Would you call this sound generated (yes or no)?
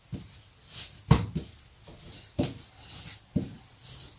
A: no